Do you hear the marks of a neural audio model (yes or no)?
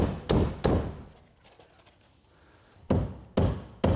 no